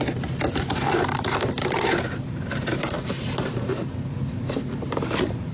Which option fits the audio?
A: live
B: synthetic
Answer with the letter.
B